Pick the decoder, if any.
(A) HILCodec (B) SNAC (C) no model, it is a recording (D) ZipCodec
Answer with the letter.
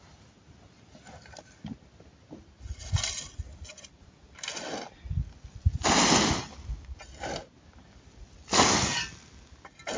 C